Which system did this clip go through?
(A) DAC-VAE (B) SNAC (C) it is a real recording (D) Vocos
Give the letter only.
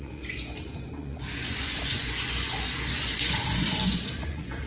D